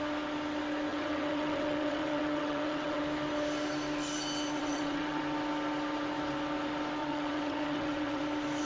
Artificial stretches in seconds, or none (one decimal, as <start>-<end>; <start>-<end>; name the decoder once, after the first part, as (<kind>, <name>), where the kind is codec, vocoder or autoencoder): 0.9-3.0 (vocoder, WaveNeXt); 4.6-5.2; 7.0-8.2